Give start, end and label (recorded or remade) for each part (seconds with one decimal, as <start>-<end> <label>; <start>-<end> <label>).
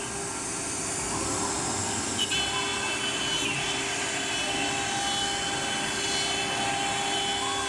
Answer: 0.0-7.7 recorded